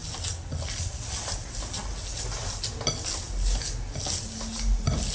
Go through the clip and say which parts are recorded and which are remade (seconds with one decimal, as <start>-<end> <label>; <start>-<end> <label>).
0.0-5.1 recorded